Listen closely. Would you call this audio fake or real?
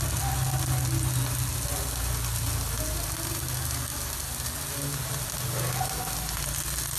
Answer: real